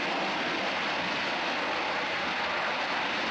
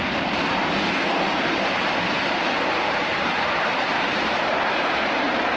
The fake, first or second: second